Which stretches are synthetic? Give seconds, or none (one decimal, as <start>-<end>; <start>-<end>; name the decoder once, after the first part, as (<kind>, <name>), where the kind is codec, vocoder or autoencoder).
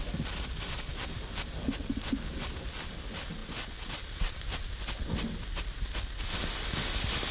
none